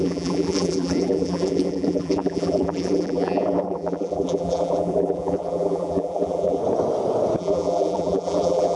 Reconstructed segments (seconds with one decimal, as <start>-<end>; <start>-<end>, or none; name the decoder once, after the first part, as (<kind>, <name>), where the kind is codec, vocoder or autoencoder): 0.0-6.6 (vocoder, BigVGAN v2); 7.4-8.8